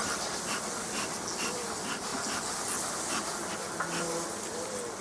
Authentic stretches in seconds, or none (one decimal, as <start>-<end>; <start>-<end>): 0.0-5.0